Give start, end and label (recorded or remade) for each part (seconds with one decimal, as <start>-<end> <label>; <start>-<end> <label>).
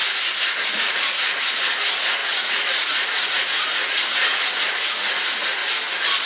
0.0-0.7 recorded; 0.7-5.6 remade; 5.6-6.3 recorded